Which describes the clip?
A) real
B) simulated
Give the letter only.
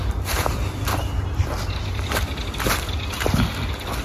A